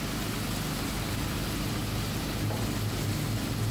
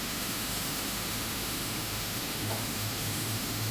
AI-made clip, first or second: second